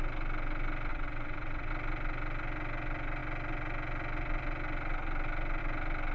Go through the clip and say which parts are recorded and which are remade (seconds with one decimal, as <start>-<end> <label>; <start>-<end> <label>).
0.0-0.9 recorded; 0.9-1.7 remade; 1.7-6.1 recorded